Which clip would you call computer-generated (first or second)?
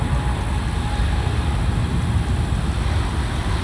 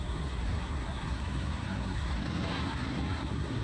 second